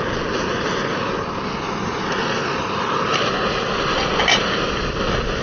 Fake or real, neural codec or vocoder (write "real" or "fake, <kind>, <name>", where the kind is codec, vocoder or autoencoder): real